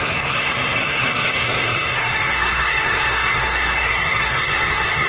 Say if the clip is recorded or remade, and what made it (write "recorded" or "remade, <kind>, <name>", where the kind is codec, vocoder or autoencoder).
remade, codec, SNAC